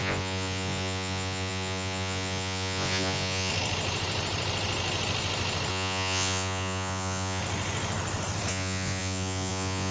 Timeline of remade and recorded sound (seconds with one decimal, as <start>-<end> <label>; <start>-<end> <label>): 0.0-3.5 remade; 3.5-5.7 recorded; 5.7-7.4 remade; 7.4-8.5 recorded; 8.5-9.9 remade